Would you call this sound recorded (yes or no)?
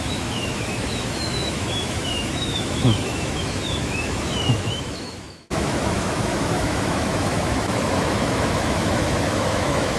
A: no